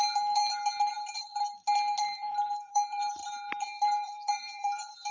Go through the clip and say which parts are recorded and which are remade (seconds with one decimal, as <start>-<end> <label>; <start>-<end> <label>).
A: 0.0-0.9 recorded; 0.9-1.3 remade; 1.3-2.0 recorded; 2.0-3.2 remade; 3.2-3.8 recorded; 3.8-5.1 remade